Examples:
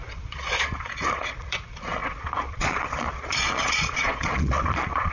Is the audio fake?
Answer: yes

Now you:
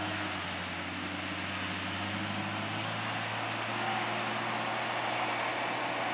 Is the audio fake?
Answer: no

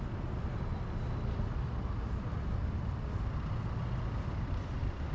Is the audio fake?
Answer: no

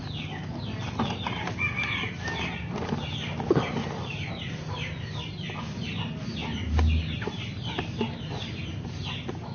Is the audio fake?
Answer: no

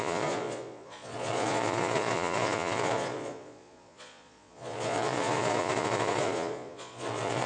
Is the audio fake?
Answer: yes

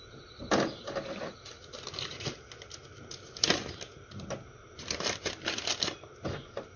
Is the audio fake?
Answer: no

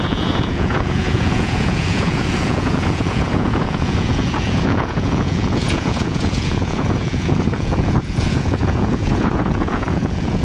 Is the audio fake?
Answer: yes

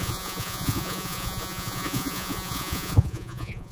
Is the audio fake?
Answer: yes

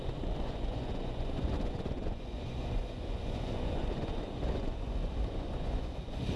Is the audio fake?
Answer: yes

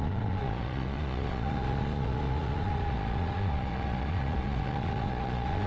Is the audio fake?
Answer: yes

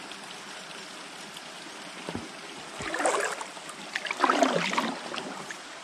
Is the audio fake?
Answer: no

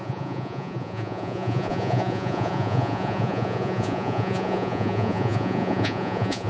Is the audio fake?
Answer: yes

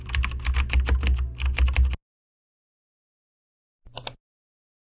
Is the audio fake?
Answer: no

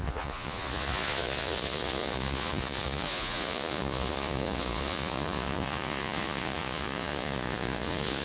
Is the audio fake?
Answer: yes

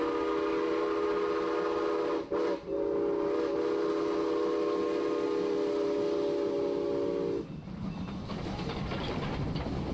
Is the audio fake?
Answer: no